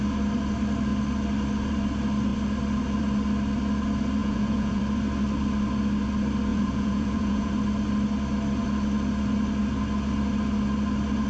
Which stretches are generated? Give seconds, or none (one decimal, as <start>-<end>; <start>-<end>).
4.2-4.8; 6.5-7.5